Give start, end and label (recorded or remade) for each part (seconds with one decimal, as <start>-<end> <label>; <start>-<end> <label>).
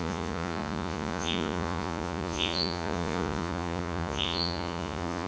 0.0-5.3 remade